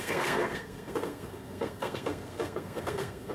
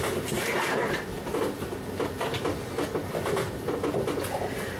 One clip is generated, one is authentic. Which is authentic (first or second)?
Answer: second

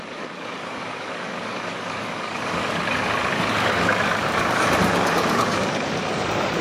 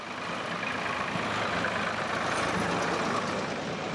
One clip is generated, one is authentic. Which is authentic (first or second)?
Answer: second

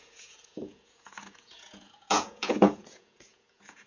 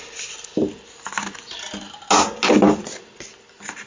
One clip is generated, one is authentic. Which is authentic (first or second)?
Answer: second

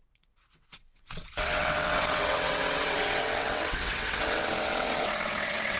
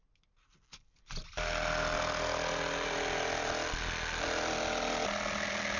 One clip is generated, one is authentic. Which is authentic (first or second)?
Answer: second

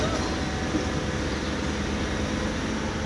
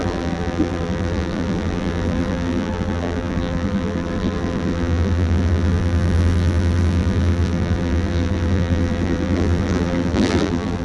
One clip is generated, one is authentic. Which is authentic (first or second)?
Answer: first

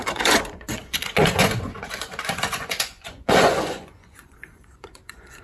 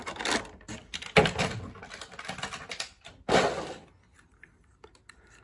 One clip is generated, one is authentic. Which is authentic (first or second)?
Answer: second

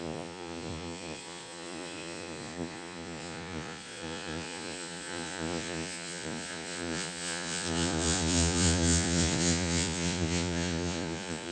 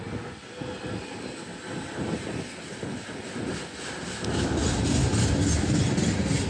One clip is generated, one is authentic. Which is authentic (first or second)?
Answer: second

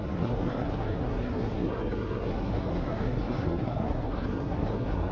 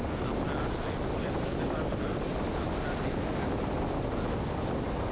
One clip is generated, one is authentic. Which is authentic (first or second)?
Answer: second